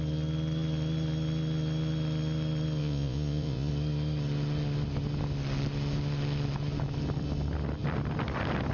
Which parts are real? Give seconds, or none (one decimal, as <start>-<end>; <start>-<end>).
0.0-2.8; 3.7-8.7